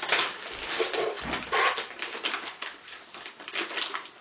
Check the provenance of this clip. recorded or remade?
recorded